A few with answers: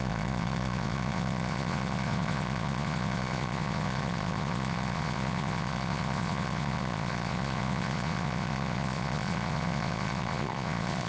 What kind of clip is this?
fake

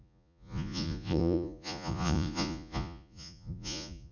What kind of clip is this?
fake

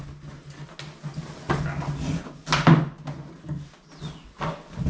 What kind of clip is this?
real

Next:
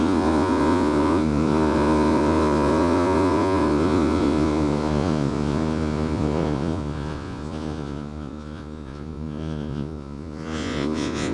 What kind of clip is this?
fake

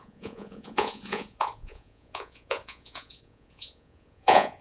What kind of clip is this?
fake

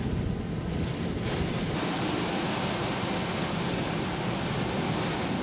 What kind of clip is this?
real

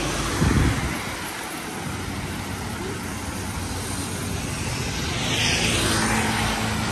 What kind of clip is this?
real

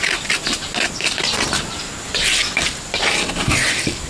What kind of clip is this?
real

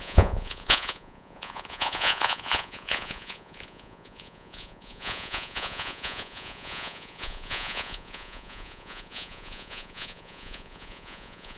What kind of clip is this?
fake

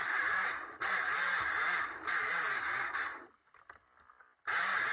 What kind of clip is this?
real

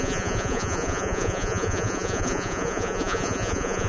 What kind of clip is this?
fake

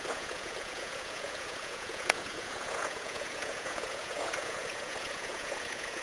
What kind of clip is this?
fake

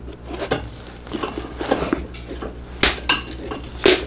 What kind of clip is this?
real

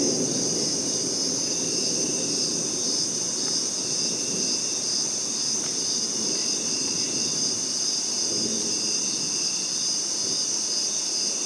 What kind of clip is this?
real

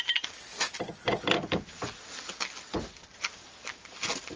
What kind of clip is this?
real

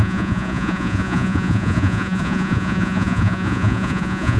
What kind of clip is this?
fake